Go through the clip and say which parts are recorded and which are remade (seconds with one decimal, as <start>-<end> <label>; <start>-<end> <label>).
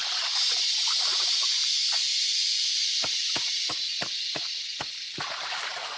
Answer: 0.0-0.5 remade; 0.5-1.1 recorded; 1.1-1.6 remade; 1.6-2.8 recorded; 2.8-4.3 remade; 4.3-6.0 recorded